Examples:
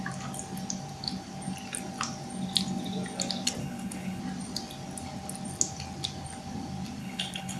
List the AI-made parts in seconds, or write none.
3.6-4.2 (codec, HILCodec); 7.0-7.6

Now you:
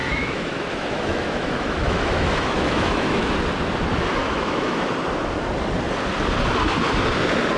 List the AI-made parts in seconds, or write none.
0.0-3.3 (autoencoder, DAC-VAE); 4.2-4.9

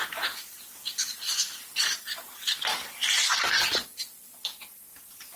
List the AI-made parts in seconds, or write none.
0.0-0.5 (vocoder, Vocos); 3.7-5.4

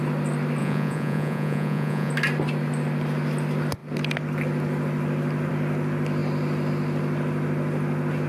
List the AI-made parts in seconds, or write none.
0.6-2.1 (vocoder, Vocos)

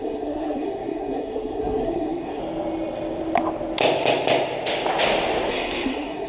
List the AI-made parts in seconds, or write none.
0.0-2.4 (codec, SNAC); 5.5-6.3

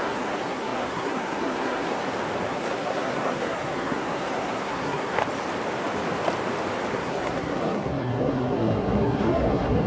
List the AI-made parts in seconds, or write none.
0.0-2.0 (codec, SNAC); 2.5-5.2; 6.9-9.9